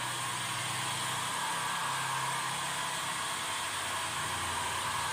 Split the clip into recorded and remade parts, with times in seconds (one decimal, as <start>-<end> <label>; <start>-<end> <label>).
0.0-5.1 recorded